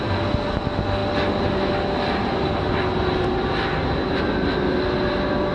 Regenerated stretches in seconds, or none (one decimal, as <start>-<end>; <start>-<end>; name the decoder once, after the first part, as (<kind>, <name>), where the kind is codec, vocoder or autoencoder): none